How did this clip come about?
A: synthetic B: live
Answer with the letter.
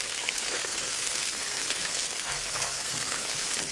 A